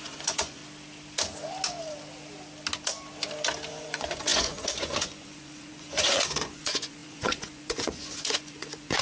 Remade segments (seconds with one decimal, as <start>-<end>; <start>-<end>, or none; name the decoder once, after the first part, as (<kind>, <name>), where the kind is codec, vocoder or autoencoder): 0.0-0.6 (vocoder, Vocos); 3.7-9.0